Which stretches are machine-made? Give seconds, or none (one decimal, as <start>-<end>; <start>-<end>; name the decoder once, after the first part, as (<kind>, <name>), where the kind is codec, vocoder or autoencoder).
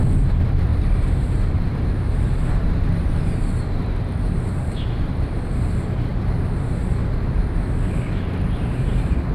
0.7-5.4 (vocoder, BigVGAN v2); 6.1-6.8